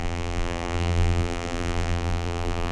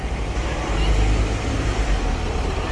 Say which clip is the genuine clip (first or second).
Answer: second